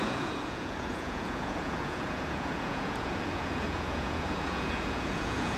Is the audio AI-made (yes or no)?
yes